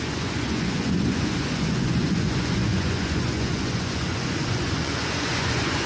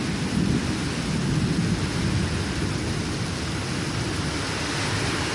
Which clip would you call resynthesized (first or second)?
first